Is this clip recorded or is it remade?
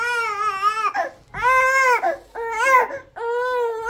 recorded